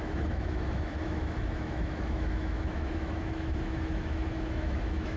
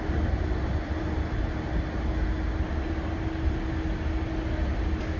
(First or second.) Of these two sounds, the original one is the second